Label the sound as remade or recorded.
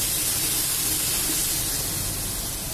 recorded